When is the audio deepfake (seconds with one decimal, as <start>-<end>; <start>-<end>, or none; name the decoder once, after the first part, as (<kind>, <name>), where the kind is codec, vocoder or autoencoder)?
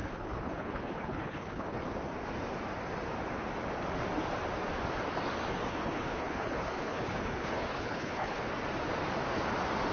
0.0-1.8 (codec, HILCodec); 5.7-8.5